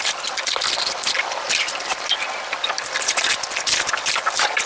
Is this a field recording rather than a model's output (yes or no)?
yes